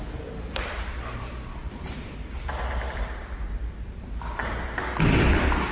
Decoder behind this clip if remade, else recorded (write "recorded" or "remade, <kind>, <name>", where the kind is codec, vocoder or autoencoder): remade, vocoder, BigVGAN v2